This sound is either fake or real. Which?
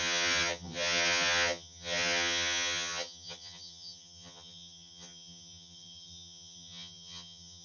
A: fake